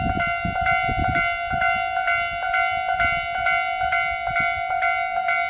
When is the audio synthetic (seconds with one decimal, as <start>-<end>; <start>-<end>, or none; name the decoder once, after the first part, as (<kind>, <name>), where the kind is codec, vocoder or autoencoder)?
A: none